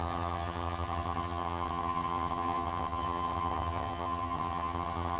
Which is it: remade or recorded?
remade